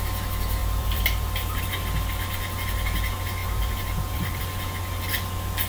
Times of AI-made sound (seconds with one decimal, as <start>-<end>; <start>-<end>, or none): 0.6-1.6; 3.4-4.4